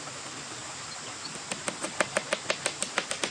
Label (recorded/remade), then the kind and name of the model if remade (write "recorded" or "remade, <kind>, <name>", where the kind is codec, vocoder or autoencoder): recorded